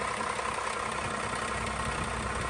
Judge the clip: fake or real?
real